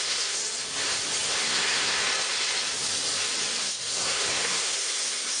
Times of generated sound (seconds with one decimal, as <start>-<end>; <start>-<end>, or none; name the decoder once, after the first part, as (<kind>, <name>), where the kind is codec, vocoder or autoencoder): 0.0-0.4 (codec, SNAC); 1.4-2.0; 3.6-5.4